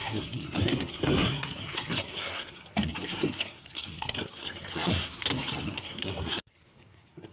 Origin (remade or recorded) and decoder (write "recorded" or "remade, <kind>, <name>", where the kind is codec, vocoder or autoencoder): remade, codec, SNAC